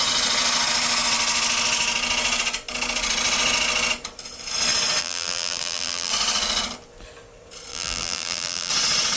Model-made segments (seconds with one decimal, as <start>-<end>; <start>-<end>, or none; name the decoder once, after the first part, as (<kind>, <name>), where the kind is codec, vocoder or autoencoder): 5.0-6.1 (vocoder, BigVGAN v2); 7.7-8.7

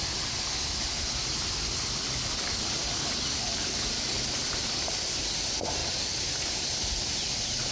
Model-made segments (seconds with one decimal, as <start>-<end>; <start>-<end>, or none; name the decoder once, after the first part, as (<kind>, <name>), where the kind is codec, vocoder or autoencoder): 5.8-7.7 (vocoder, BigVGAN v2)

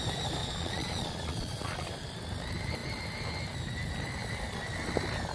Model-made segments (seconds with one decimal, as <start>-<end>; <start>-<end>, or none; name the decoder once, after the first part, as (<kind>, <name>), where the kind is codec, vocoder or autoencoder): 0.4-1.9 (vocoder, Vocos)